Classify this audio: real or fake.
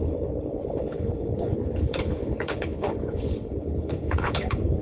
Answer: fake